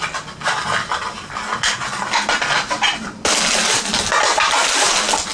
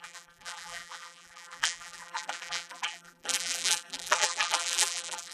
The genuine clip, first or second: first